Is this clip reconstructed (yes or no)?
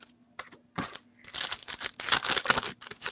no